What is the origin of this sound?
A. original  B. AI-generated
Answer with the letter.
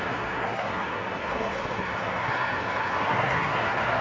B